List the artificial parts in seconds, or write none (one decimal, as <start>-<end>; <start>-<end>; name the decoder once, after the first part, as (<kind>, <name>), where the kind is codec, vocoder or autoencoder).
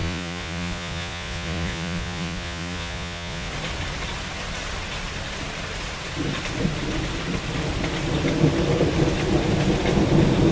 0.0-3.5 (vocoder, Vocos)